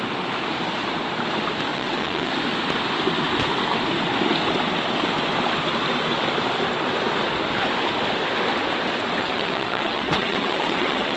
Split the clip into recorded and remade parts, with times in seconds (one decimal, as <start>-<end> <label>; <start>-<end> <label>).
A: 0.0-1.7 recorded; 1.7-2.3 remade; 2.3-9.2 recorded; 9.2-11.2 remade